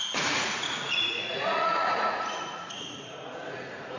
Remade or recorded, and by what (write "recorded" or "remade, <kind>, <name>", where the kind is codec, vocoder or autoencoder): remade, vocoder, Vocos